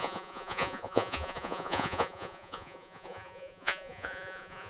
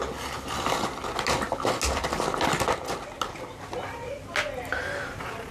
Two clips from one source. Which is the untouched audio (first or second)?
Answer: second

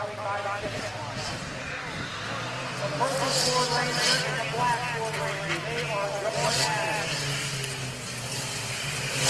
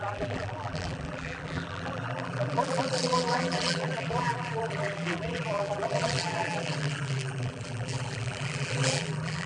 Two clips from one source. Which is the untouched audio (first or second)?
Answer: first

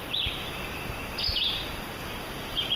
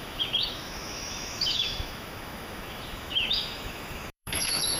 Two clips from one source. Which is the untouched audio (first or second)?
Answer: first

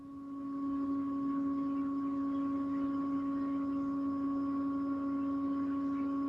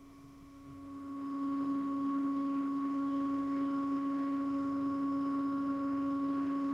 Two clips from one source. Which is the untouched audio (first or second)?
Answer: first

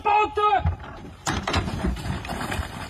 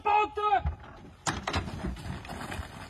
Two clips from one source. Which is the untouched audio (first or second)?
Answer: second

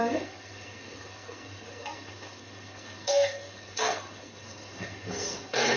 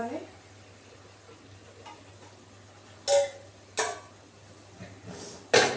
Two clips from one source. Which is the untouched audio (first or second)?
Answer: second